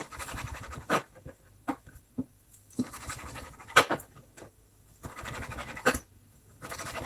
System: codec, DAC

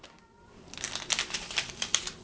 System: none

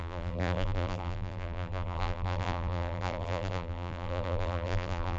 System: vocoder, BigVGAN v2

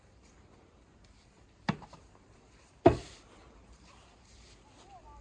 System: none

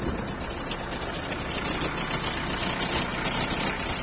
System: none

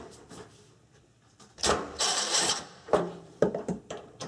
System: vocoder, BigVGAN v2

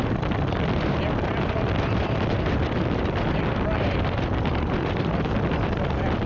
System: vocoder, BigVGAN v2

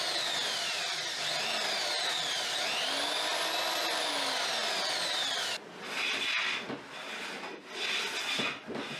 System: none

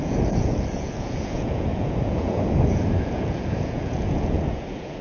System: vocoder, Vocos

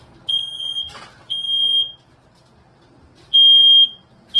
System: none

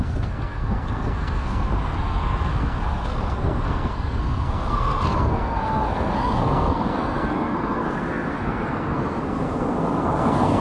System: codec, SNAC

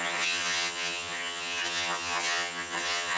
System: vocoder, HiFi-GAN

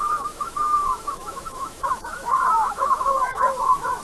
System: autoencoder, DAC-VAE